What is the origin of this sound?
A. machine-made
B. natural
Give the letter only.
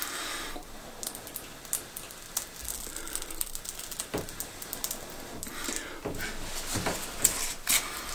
B